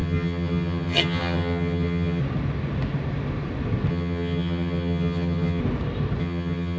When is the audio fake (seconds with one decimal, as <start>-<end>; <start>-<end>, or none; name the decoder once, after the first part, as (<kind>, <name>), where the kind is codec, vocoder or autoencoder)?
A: 0.0-2.2 (vocoder, HiFi-GAN); 3.9-5.6; 6.2-6.8